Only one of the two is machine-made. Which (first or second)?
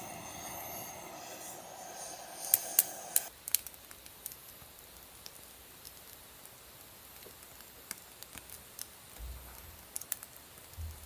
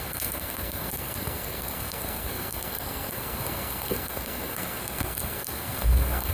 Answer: second